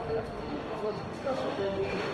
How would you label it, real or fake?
fake